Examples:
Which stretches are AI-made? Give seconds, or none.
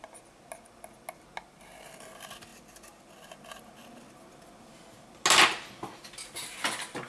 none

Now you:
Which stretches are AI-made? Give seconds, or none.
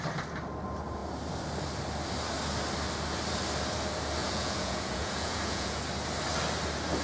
4.2-5.8